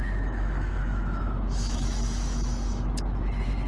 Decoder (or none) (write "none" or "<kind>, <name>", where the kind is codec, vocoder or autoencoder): autoencoder, DAC-VAE